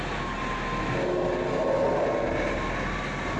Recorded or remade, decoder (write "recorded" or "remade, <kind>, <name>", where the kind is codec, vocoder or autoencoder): recorded